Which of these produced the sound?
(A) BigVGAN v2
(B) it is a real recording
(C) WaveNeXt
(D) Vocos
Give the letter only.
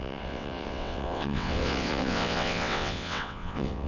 C